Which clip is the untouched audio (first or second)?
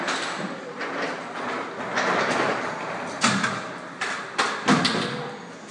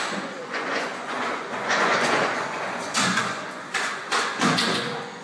first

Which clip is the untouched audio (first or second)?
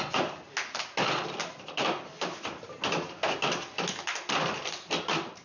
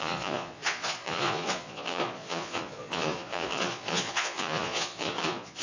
first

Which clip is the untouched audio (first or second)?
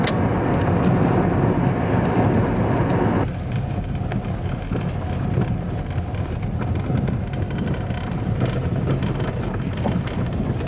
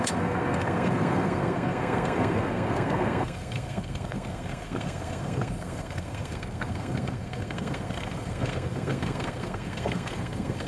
first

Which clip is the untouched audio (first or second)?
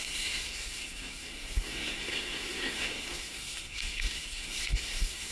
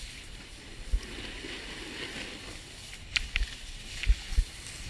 second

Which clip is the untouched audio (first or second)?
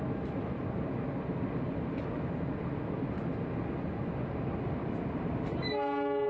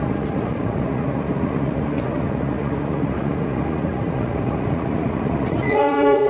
first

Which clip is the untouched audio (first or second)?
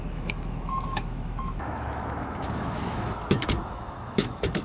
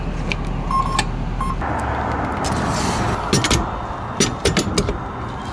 second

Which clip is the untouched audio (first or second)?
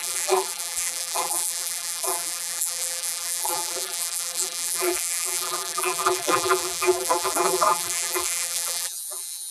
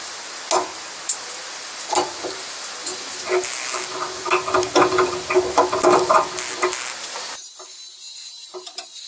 second